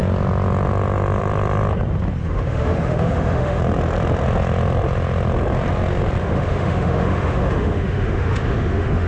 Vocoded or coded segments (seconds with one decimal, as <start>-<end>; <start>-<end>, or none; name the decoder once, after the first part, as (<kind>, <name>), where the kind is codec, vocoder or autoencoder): 2.2-3.6 (autoencoder, DAC-VAE); 6.2-9.1